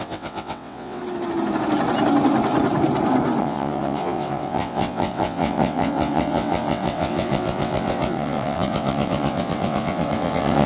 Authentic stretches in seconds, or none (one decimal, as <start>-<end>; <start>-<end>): 1.0-3.4